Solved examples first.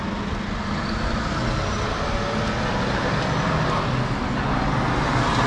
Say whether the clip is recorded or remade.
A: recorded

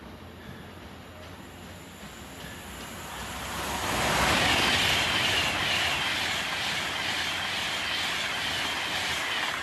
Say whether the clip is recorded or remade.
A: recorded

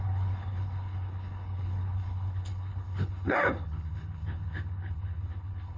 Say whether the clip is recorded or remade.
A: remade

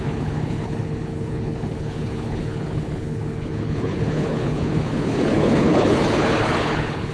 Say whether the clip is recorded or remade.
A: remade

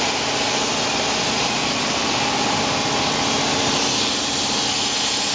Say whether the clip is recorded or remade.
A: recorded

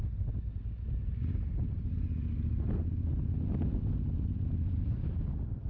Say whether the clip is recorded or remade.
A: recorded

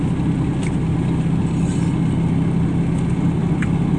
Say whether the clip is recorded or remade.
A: recorded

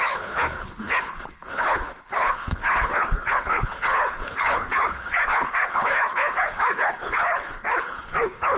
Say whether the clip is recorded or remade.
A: remade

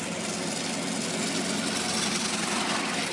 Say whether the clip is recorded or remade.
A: recorded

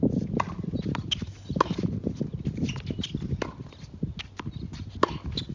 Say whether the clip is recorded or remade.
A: recorded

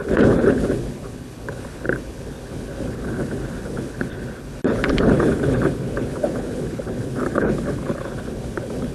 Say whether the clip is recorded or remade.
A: remade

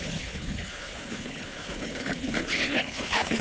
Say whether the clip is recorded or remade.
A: remade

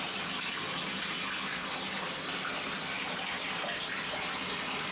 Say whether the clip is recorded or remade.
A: recorded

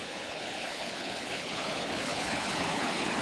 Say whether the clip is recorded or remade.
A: remade